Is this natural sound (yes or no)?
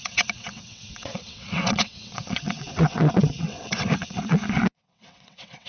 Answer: no